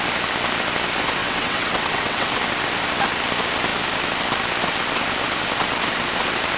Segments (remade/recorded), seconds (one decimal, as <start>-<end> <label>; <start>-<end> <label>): 0.0-1.2 recorded; 1.2-2.3 remade; 2.3-6.6 recorded